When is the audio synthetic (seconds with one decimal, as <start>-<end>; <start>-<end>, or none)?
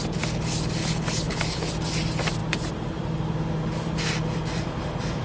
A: 0.8-1.7